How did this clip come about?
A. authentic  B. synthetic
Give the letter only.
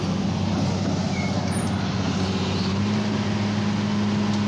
A